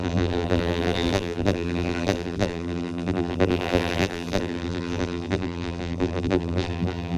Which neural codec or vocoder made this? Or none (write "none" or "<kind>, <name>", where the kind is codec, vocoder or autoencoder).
vocoder, BigVGAN v2